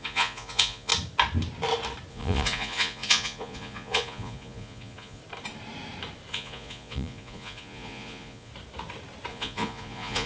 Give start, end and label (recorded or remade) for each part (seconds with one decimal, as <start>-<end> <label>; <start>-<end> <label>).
0.0-0.9 remade; 0.9-2.1 recorded; 2.1-5.2 remade; 5.2-6.3 recorded; 6.3-8.5 remade; 8.5-9.3 recorded; 9.3-10.3 remade